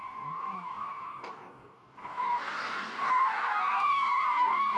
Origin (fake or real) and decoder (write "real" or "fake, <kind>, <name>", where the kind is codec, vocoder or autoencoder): fake, codec, DAC